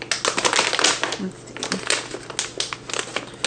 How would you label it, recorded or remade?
recorded